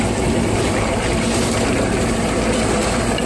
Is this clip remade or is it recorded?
remade